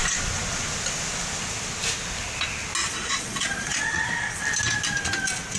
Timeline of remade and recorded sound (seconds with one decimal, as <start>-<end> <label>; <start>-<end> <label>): 0.0-2.8 recorded; 2.8-4.4 remade; 4.4-5.6 recorded